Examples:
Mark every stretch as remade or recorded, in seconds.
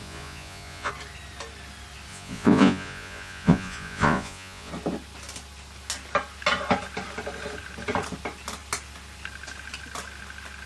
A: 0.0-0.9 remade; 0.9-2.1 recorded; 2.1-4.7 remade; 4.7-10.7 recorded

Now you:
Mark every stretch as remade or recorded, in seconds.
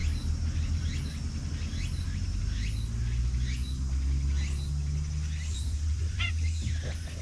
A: 0.0-5.5 recorded; 5.5-6.3 remade; 6.3-7.2 recorded